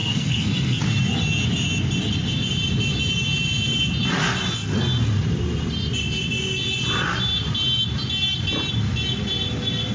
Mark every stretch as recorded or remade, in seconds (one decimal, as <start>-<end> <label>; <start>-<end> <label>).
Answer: 0.0-0.8 remade; 0.8-9.9 recorded